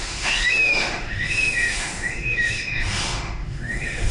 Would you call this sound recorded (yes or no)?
no